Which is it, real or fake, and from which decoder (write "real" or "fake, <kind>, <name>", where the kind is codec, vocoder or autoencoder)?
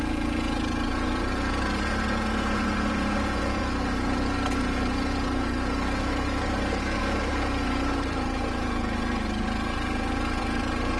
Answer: fake, vocoder, Vocos